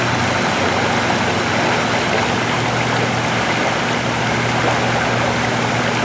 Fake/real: real